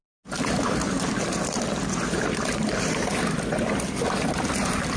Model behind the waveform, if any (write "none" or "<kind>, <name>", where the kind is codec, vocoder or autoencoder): none